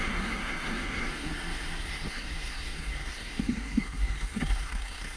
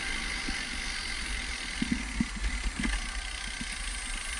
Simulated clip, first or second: first